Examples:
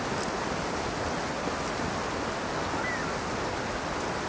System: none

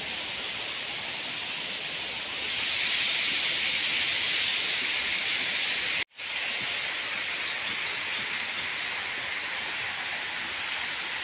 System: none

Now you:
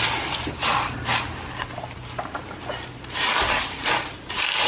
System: none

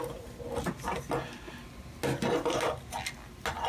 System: none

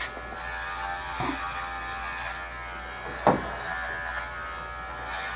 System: none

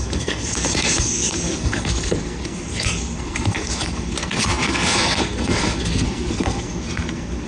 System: codec, SNAC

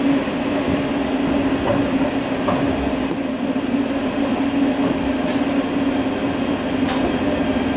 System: none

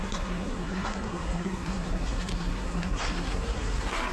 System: codec, SNAC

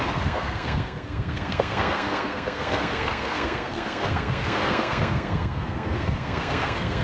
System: codec, SNAC